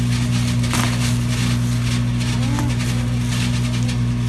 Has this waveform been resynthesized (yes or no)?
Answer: no